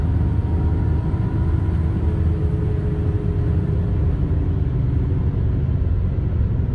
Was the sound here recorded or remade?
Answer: recorded